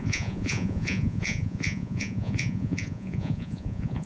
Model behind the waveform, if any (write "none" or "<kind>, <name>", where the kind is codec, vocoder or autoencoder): vocoder, Vocos